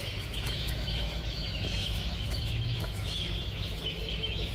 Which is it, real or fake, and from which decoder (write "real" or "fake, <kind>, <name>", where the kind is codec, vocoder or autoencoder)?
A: fake, autoencoder, DAC-VAE